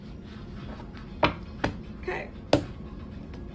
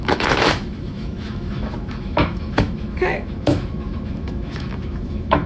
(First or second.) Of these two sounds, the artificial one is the second